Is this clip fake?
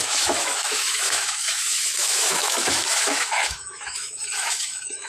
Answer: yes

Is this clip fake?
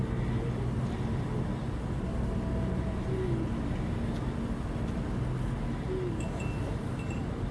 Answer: no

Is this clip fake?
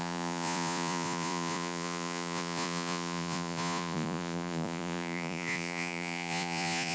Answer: yes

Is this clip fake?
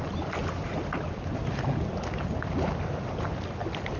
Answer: no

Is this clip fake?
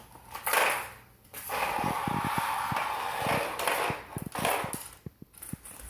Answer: no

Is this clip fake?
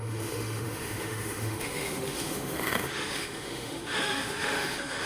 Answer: yes